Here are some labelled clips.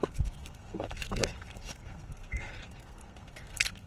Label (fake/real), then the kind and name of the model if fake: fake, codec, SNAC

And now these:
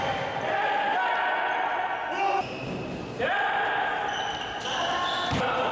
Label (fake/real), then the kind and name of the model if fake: real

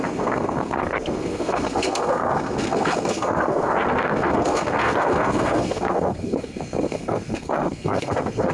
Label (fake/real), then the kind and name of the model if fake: fake, codec, SNAC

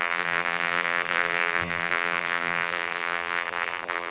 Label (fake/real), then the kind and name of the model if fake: fake, vocoder, BigVGAN v2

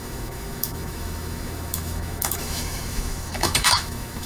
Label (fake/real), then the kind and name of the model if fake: fake, autoencoder, DAC-VAE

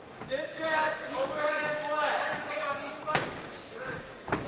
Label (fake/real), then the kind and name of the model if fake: fake, codec, DAC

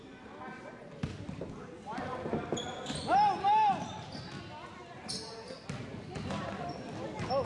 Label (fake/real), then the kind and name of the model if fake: real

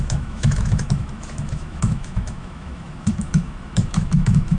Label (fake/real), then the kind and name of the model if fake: fake, autoencoder, DAC-VAE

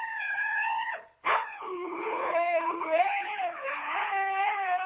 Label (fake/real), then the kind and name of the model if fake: fake, codec, HILCodec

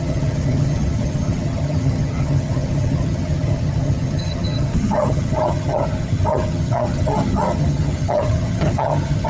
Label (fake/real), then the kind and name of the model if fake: fake, vocoder, HiFi-GAN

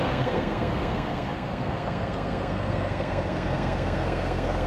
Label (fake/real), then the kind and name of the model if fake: fake, codec, SNAC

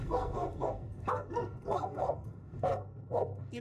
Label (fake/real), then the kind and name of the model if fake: fake, codec, SNAC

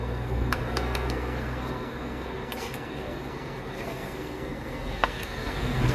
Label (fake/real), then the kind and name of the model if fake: fake, codec, SNAC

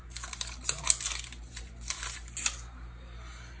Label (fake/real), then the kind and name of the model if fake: real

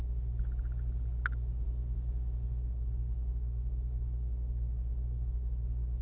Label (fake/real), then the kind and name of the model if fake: real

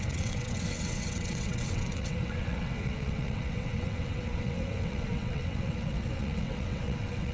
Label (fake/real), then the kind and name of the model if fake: fake, vocoder, WaveNeXt